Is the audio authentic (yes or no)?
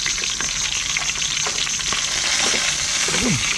yes